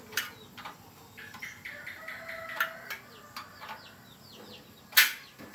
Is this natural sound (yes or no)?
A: yes